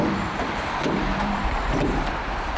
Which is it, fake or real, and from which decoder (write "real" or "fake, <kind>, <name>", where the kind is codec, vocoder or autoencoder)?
fake, vocoder, BigVGAN v2